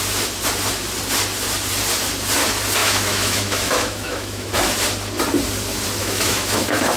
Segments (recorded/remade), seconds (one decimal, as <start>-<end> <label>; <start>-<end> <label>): 0.0-2.8 recorded; 2.8-4.5 remade; 4.5-6.0 recorded; 6.0-7.0 remade